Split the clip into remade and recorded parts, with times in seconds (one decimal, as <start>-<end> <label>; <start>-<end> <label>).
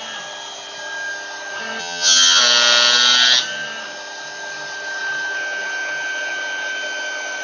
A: 0.0-1.8 recorded; 1.8-2.4 remade; 2.4-7.4 recorded